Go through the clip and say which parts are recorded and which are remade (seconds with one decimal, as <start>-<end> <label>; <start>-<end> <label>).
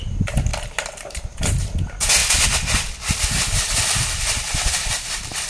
0.0-0.5 recorded; 0.5-1.5 remade; 1.5-5.5 recorded